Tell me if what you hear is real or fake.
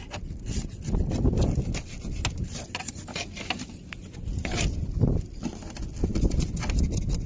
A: real